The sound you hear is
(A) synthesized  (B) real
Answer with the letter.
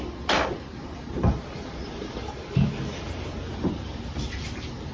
A